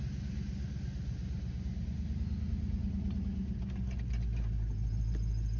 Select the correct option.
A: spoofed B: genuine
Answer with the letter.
B